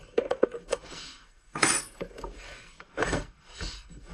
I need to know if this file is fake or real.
fake